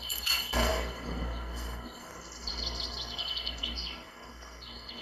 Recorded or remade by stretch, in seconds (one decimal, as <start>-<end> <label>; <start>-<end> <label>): 0.0-5.0 remade